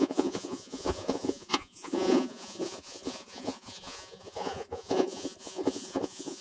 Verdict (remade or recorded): remade